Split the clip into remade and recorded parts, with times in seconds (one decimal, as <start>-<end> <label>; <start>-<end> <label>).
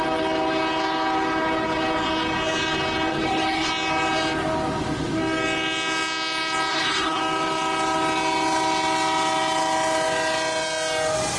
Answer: 0.0-3.1 recorded; 3.1-3.7 remade; 3.7-6.7 recorded; 6.7-7.2 remade; 7.2-11.4 recorded